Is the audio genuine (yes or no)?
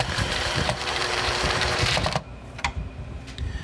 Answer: no